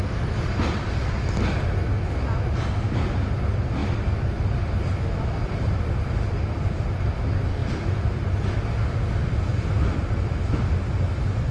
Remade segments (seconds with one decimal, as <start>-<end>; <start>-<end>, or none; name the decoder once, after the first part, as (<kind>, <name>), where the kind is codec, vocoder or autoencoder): 0.0-1.4 (vocoder, BigVGAN v2); 3.8-6.8; 7.6-11.5